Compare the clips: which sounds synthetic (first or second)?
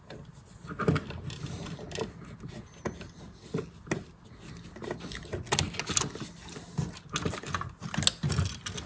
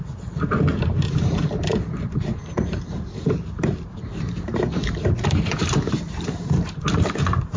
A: second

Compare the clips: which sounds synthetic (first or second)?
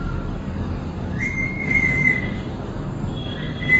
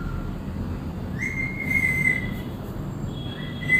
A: first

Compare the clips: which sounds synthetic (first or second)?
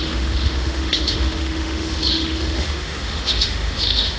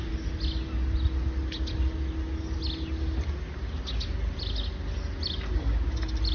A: first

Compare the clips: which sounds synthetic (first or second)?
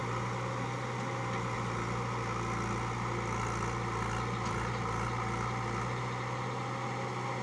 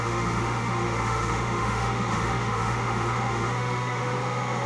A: second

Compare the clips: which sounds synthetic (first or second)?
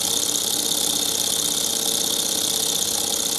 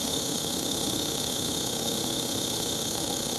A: second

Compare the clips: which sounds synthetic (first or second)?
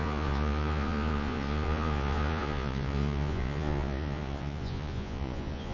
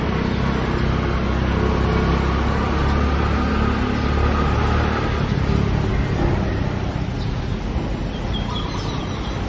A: first